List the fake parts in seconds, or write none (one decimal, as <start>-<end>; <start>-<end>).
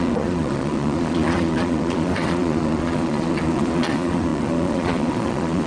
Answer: 0.0-5.7